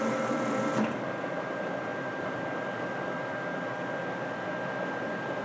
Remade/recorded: remade